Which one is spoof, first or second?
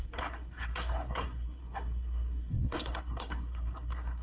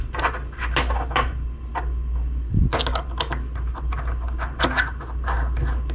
first